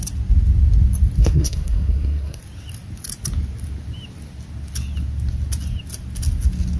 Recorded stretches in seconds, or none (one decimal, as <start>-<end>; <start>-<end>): 0.0-1.2; 2.4-6.8